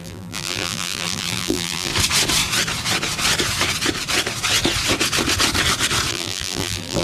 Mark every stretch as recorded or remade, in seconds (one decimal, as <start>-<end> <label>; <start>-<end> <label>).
0.0-1.9 remade; 1.9-6.1 recorded; 6.1-7.0 remade